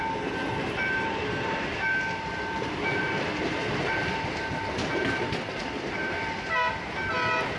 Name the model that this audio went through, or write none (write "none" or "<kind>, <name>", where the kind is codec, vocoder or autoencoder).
none